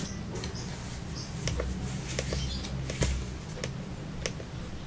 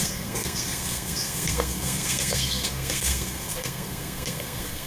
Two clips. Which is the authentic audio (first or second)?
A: first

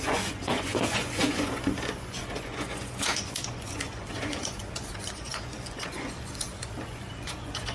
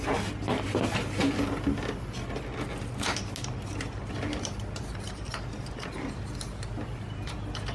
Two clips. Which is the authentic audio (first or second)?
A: second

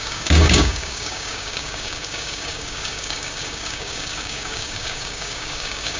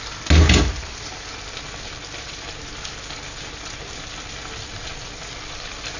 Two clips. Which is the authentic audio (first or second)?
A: second